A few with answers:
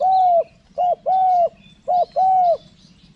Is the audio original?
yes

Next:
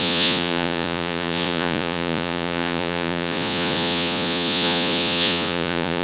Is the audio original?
no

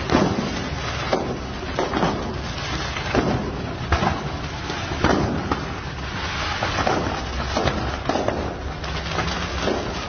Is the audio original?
yes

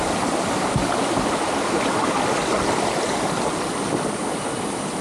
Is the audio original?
yes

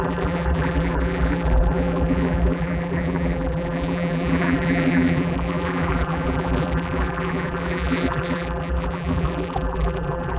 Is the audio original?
no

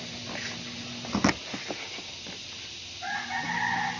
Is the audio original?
yes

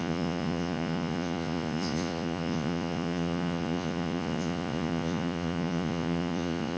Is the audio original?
no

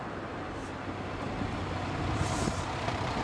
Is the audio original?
no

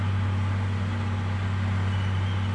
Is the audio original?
yes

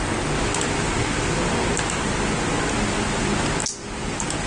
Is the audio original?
yes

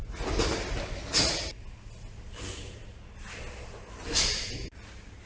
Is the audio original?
yes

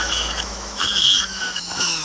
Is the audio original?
no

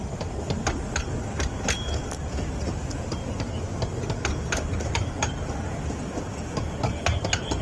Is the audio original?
yes